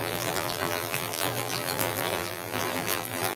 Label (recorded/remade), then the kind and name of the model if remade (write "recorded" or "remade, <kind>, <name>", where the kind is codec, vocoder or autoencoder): remade, vocoder, BigVGAN v2